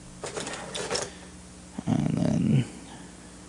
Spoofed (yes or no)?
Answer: no